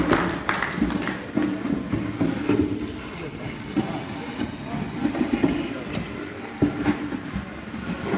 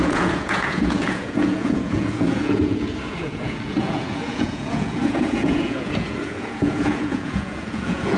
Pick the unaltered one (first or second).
first